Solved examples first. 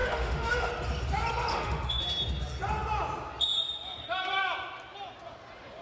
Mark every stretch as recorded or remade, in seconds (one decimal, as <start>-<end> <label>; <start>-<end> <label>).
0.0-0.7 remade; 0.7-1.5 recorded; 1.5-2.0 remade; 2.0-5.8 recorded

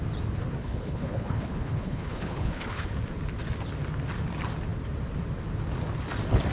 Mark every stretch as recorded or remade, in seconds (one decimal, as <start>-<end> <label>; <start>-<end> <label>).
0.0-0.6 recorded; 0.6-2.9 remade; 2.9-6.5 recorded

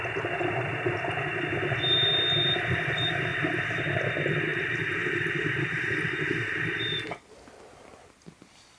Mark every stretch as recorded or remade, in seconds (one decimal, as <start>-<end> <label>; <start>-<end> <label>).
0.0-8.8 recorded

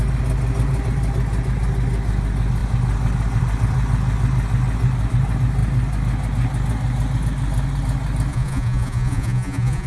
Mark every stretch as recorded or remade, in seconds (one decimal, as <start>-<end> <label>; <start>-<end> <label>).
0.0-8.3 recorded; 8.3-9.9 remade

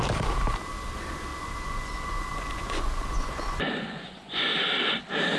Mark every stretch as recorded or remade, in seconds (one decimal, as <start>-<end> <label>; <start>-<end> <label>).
0.0-1.3 recorded; 1.3-4.5 remade; 4.5-5.4 recorded

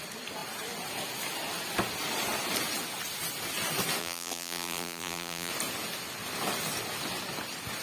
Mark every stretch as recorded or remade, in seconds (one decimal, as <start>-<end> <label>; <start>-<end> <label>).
0.0-4.0 recorded; 4.0-5.5 remade; 5.5-7.8 recorded

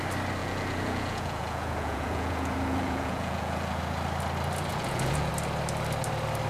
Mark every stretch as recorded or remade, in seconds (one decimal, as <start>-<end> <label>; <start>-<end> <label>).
0.0-0.4 recorded; 0.4-3.8 remade; 3.8-4.7 recorded; 4.7-5.3 remade; 5.3-6.5 recorded